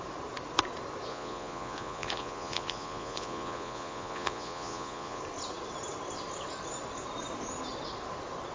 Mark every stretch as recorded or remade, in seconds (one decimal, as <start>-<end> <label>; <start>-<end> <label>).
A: 0.0-1.1 recorded; 1.1-5.2 remade; 5.2-8.5 recorded